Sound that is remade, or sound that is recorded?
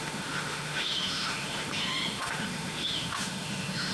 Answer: remade